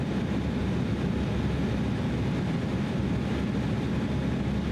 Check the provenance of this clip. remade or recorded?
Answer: recorded